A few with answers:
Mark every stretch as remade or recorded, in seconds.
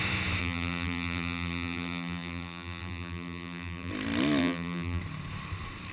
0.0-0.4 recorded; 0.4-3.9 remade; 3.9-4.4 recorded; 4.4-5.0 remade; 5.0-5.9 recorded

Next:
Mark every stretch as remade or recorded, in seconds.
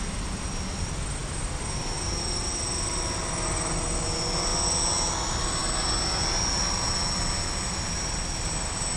0.0-9.0 recorded